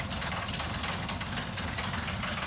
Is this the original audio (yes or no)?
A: yes